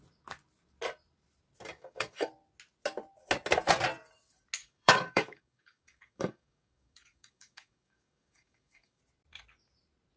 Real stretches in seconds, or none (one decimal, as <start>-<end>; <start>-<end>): 0.0-1.7; 2.3-4.6; 9.0-10.2